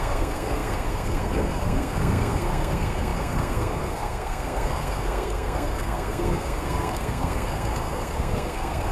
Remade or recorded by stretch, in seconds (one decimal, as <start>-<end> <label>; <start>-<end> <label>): 0.0-8.9 remade